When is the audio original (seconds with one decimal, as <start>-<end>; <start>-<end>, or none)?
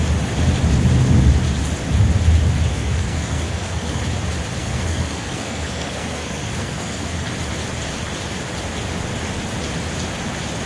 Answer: 0.0-2.7; 4.0-4.6; 7.3-10.7